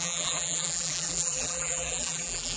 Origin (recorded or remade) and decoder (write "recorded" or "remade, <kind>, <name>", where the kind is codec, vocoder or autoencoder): remade, vocoder, BigVGAN v2